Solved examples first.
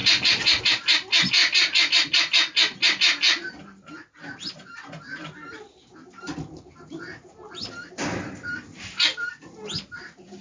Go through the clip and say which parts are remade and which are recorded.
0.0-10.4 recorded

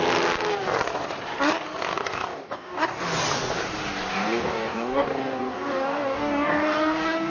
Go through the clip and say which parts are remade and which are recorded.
0.0-1.9 recorded; 1.9-3.0 remade; 3.0-4.1 recorded; 4.1-7.3 remade

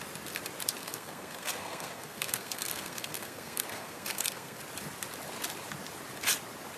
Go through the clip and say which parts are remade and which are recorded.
0.0-0.8 recorded; 0.8-4.6 remade; 4.6-6.8 recorded

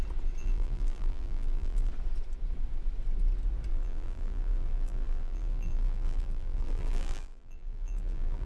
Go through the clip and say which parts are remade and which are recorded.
0.0-0.4 recorded; 0.4-1.9 remade; 1.9-3.7 recorded; 3.7-8.5 remade

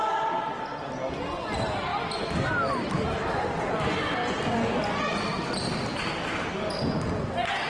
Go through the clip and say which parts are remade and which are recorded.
0.0-7.7 recorded

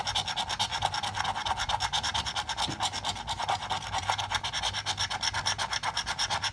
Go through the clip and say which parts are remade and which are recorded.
0.0-6.5 recorded